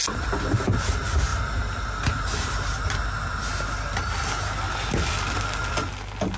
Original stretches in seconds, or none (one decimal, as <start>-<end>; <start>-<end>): 0.0-6.4